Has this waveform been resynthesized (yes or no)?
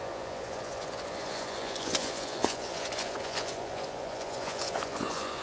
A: yes